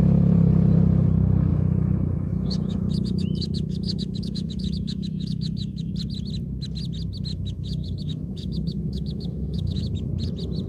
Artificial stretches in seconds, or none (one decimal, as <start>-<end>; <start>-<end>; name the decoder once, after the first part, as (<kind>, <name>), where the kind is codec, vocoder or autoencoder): 1.5-5.9 (autoencoder, DAC-VAE); 7.3-10.1